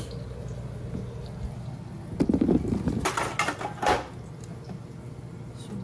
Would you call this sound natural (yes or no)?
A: yes